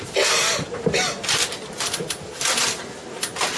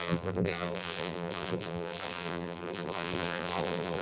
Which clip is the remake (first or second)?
second